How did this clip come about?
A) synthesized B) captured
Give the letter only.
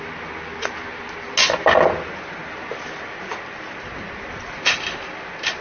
B